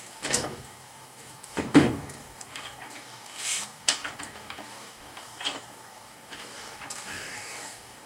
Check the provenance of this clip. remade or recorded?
remade